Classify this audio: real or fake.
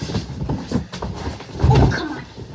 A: real